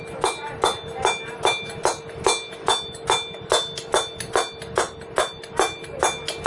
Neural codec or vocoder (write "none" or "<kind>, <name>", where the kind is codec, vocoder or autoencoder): none